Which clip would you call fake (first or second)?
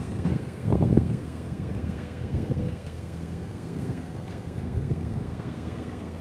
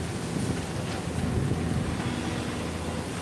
first